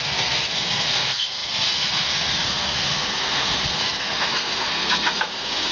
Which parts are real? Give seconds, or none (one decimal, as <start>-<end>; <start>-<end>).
none